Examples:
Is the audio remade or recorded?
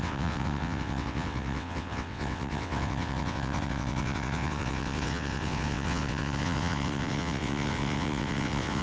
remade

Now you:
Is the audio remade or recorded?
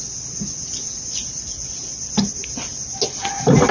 recorded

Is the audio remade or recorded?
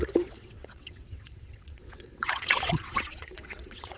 remade